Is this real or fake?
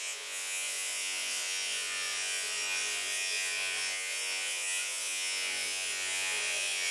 fake